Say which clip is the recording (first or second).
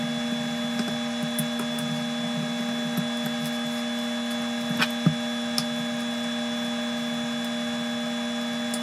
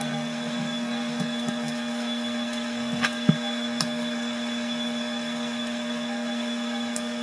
first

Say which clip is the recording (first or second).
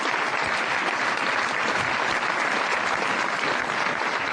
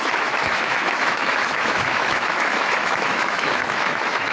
first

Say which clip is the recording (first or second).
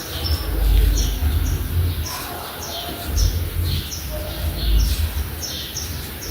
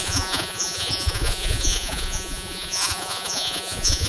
first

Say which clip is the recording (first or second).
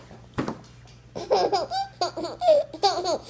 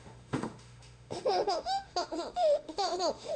first